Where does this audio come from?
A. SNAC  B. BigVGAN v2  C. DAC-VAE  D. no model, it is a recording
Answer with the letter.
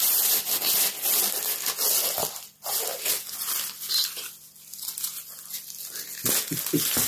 D